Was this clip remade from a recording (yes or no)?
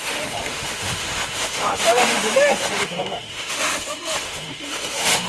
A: yes